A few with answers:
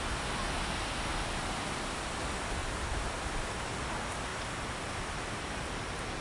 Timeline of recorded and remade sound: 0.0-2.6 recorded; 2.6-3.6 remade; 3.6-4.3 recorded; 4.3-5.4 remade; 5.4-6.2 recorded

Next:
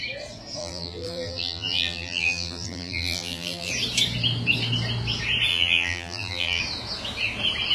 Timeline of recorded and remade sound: 0.0-0.6 recorded; 0.6-3.7 remade; 3.7-5.5 recorded; 5.5-6.6 remade; 6.6-7.7 recorded

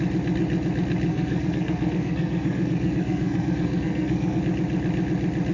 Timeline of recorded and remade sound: 0.0-1.1 recorded; 1.1-4.4 remade; 4.4-5.5 recorded